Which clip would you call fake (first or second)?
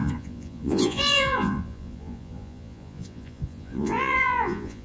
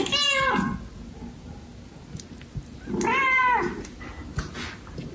first